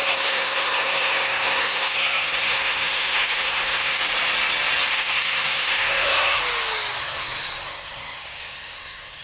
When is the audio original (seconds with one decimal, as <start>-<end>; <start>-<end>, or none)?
4.0-4.9; 6.4-7.0